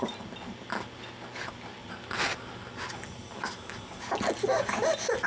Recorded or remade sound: recorded